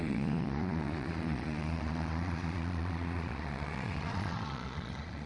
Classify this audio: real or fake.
fake